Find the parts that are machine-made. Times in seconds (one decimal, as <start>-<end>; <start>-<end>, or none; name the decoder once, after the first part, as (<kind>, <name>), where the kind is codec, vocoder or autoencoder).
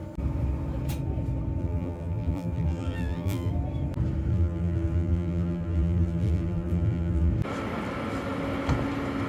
1.6-3.5 (vocoder, BigVGAN v2); 4.3-7.3